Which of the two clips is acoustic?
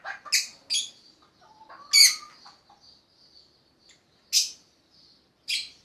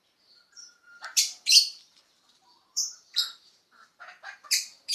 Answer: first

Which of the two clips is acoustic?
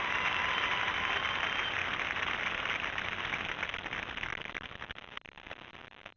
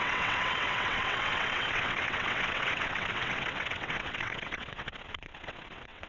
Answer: first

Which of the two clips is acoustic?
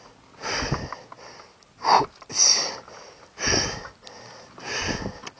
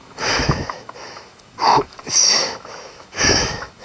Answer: first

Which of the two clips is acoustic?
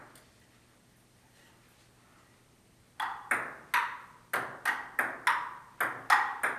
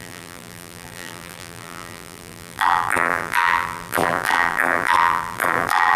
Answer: first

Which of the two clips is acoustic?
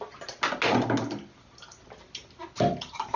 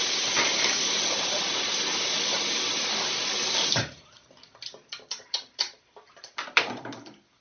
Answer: first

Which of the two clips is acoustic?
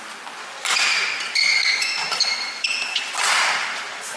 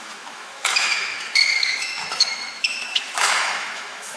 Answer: first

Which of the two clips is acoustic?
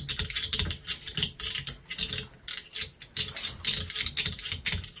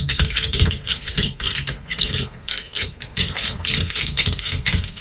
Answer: first